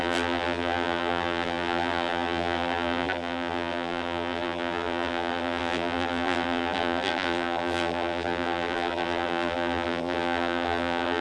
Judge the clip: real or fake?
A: fake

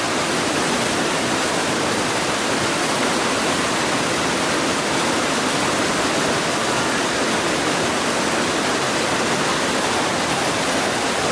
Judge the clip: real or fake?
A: real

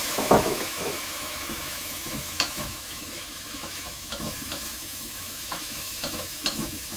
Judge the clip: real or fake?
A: fake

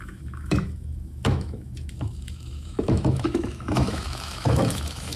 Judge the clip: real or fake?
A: fake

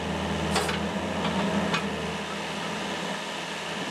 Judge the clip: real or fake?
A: real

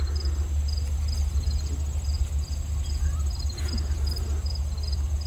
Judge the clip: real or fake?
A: real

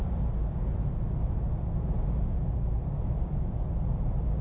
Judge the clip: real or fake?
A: real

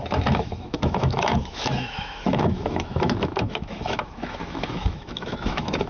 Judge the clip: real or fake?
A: fake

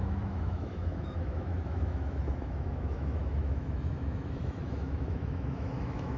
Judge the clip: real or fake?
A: fake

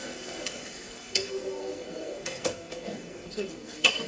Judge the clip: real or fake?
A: fake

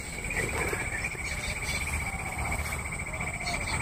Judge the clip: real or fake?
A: real